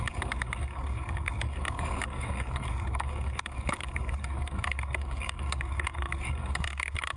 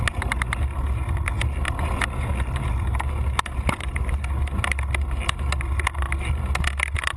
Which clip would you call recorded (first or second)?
second